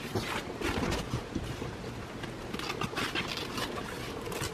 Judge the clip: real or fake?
real